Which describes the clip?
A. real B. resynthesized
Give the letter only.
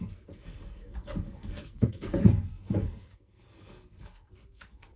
B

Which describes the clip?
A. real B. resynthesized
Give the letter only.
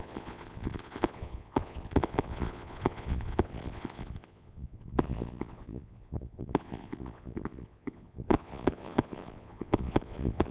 B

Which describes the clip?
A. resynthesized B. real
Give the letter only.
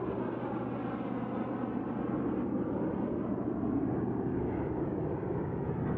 B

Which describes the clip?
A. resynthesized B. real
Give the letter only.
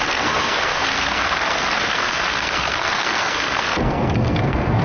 A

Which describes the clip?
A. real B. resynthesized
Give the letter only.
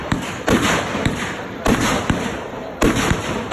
A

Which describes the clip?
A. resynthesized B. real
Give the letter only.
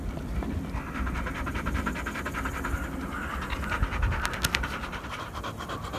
B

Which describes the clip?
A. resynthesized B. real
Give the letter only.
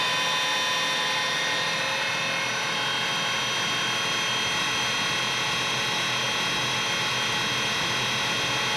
B